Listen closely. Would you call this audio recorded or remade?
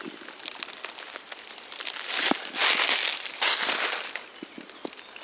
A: recorded